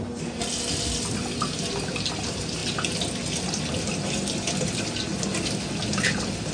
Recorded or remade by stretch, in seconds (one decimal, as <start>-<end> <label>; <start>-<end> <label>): 0.0-6.5 recorded